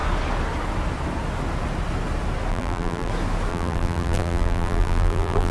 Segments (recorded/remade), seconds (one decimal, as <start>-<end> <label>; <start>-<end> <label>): 0.0-2.5 recorded; 2.5-3.1 remade; 3.1-3.5 recorded; 3.5-5.5 remade